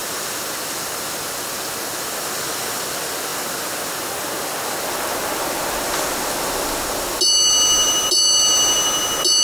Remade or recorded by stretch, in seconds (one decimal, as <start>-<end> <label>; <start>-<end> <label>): 0.0-9.4 recorded